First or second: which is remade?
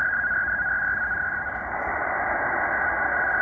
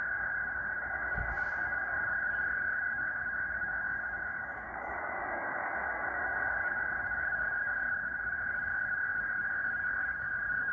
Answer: second